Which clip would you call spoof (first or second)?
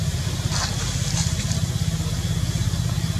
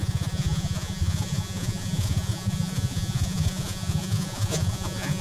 second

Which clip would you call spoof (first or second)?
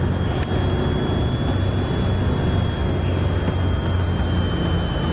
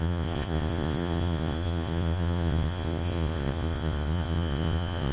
second